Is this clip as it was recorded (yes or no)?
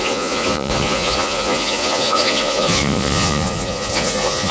no